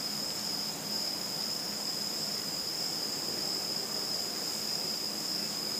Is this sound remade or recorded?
remade